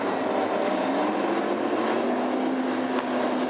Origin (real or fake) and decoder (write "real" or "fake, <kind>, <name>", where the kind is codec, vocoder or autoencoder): real